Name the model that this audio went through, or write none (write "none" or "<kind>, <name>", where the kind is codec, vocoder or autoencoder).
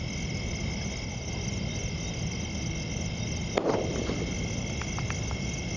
none